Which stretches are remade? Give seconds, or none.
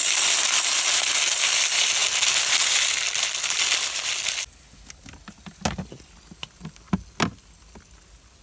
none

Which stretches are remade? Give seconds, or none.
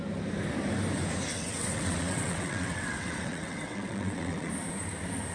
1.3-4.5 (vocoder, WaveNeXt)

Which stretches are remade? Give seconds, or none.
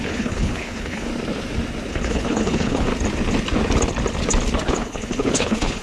0.0-1.1 (codec, HILCodec); 1.9-2.9; 4.7-5.8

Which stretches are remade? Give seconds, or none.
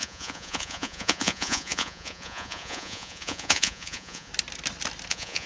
0.0-4.3 (vocoder, Vocos); 5.1-5.5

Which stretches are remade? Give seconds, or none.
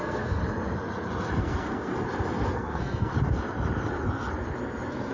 0.0-0.4 (codec, SNAC); 1.4-1.9; 2.5-3.1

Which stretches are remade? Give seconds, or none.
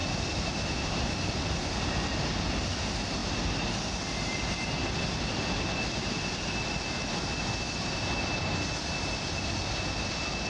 none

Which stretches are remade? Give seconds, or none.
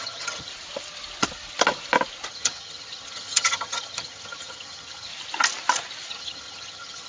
0.0-0.5 (vocoder, HiFi-GAN); 2.3-5.1; 6.1-7.1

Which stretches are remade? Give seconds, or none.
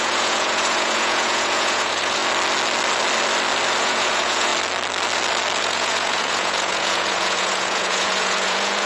0.0-2.2 (vocoder, Vocos); 3.8-4.5; 5.6-8.9